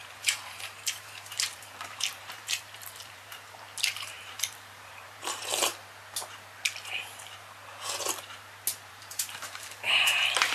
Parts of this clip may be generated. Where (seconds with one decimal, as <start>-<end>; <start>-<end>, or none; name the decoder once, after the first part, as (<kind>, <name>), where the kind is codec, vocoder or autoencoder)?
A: 0.0-5.7 (vocoder, BigVGAN v2); 8.9-10.5